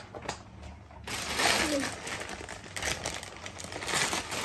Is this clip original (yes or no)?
yes